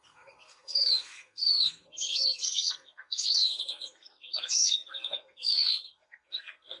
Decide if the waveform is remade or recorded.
remade